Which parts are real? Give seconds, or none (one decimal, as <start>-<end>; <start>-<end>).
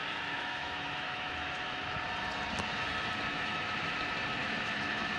1.8-3.3; 3.9-4.4